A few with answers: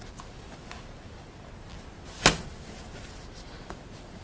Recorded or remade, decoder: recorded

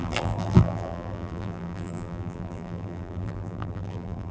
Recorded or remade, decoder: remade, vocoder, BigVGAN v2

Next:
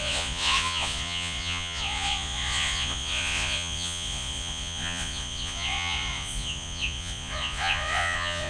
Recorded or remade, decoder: remade, vocoder, Vocos